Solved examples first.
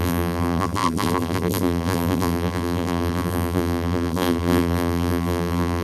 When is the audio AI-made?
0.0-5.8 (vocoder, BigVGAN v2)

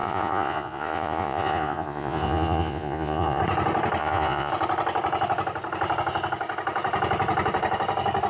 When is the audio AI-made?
0.0-3.4 (vocoder, Vocos); 4.0-4.5

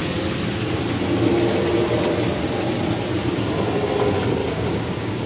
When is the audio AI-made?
4.4-5.3 (codec, DAC)

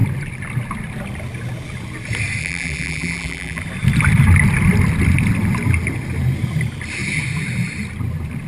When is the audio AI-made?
2.4-3.6 (vocoder, BigVGAN v2)

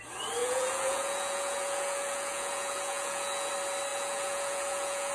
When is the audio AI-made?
0.4-3.5 (vocoder, Vocos); 3.9-5.1

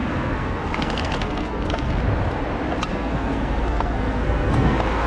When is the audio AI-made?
0.0-1.9 (codec, SNAC); 2.9-5.1

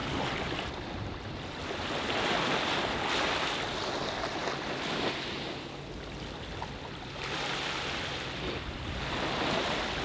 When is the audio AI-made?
none

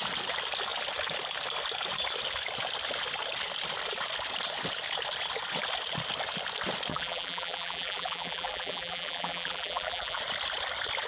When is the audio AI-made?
6.9-10.2 (vocoder, BigVGAN v2)